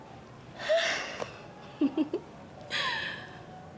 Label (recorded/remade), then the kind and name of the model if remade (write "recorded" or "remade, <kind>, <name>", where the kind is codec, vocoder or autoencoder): recorded